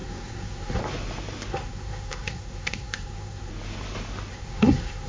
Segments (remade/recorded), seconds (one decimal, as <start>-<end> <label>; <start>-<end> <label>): 0.0-0.8 remade; 0.8-1.5 recorded; 1.5-3.5 remade; 3.5-4.3 recorded; 4.3-5.1 remade